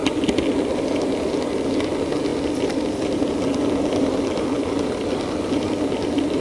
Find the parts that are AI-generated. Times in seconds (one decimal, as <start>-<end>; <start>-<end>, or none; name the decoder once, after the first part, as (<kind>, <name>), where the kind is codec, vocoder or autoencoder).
none